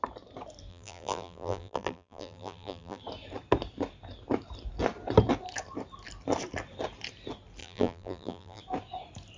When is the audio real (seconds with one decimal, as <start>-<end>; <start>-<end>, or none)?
0.0-0.7; 3.0-7.6; 8.6-9.4